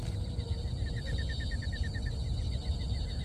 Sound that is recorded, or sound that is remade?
recorded